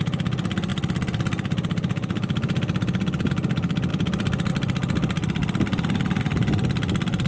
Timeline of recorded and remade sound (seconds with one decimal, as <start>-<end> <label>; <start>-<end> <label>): 0.0-0.7 recorded; 0.7-3.3 remade; 3.3-3.9 recorded; 3.9-4.5 remade; 4.5-5.4 recorded; 5.4-6.2 remade; 6.2-7.3 recorded